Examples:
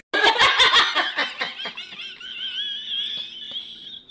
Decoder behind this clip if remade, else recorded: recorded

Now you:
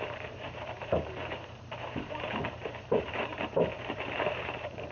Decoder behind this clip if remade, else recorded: remade, vocoder, BigVGAN v2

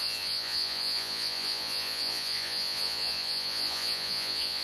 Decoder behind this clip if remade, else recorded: remade, vocoder, Vocos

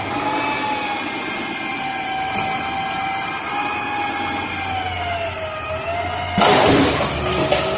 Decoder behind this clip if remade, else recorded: recorded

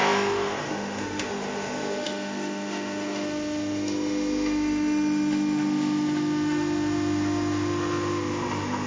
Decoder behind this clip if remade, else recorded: remade, autoencoder, DAC-VAE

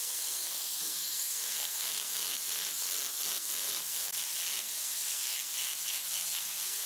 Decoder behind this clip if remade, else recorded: remade, codec, SNAC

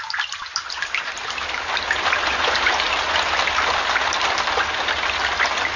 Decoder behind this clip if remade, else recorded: recorded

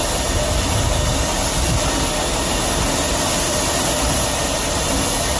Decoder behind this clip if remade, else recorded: recorded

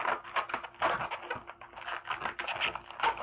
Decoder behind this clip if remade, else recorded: recorded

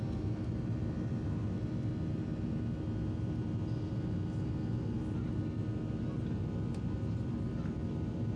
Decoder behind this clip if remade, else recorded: recorded